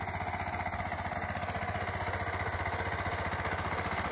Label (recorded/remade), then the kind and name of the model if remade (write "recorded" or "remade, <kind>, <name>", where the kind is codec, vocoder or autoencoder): recorded